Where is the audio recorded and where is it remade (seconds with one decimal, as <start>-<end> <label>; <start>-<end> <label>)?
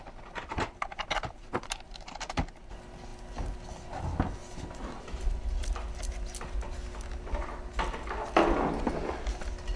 0.0-9.8 recorded